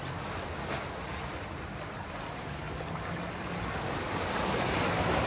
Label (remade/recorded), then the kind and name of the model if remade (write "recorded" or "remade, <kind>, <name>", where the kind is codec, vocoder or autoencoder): recorded